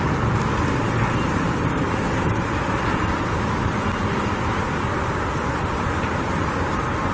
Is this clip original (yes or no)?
yes